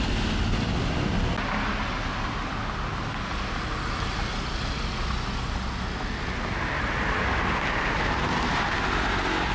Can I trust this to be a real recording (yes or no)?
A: yes